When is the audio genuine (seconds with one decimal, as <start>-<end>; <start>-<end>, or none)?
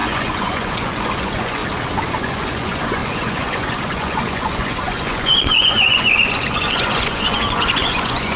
1.6-2.2